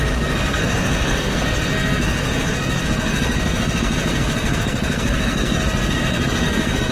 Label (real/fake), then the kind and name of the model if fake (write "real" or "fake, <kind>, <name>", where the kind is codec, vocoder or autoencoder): fake, codec, SNAC